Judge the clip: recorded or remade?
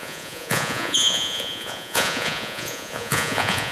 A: remade